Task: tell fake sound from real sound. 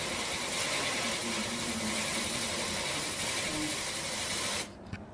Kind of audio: real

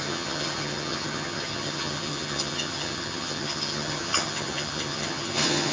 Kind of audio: fake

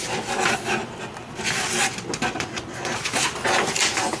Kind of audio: real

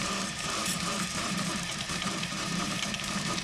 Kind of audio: fake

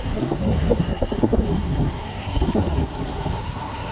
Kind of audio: fake